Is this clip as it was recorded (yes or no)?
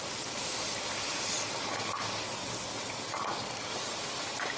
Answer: yes